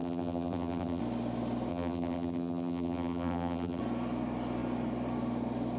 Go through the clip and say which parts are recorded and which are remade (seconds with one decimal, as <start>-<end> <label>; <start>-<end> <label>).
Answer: 0.0-1.0 remade; 1.0-1.7 recorded; 1.7-3.8 remade; 3.8-5.8 recorded